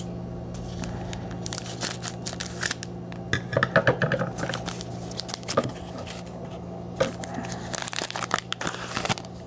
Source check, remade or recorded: recorded